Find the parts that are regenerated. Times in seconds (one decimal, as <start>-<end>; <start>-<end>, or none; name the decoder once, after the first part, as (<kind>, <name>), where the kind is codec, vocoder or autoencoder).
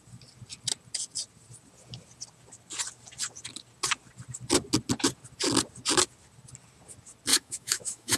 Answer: 7.3-8.2 (autoencoder, DAC-VAE)